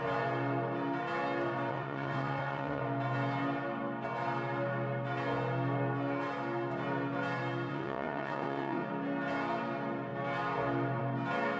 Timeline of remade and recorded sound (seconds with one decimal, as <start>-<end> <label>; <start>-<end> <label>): 0.0-1.7 recorded; 1.7-2.8 remade; 2.8-7.7 recorded; 7.7-8.9 remade; 8.9-11.6 recorded